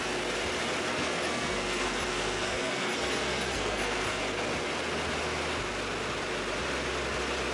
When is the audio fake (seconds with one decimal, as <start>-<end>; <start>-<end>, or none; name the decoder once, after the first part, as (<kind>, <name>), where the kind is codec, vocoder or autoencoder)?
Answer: 0.9-4.2 (codec, SNAC)